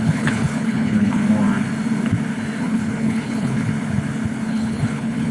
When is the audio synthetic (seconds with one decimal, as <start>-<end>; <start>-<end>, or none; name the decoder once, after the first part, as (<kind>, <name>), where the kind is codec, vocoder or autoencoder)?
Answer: 0.0-1.2 (codec, HILCodec); 2.6-3.7; 4.5-5.3

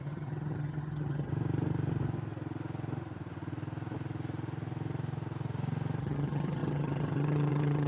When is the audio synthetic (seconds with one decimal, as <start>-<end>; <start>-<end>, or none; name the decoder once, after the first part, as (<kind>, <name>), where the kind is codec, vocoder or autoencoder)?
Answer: 0.0-1.3 (vocoder, HiFi-GAN); 6.0-7.9